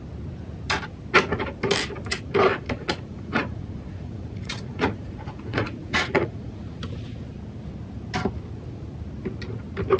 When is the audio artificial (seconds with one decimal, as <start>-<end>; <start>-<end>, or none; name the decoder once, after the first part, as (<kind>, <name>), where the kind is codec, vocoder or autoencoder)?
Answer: 2.5-6.8 (vocoder, Vocos)